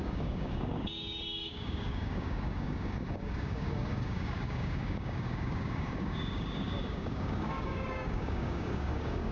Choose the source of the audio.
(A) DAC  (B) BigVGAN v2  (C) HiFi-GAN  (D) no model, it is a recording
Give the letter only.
A